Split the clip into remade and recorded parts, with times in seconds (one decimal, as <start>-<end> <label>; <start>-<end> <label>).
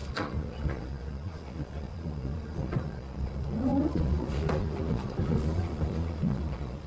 0.0-6.9 remade